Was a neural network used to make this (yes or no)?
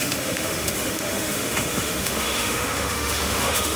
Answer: yes